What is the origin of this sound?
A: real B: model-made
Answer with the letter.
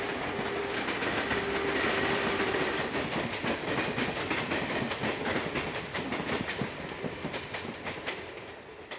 A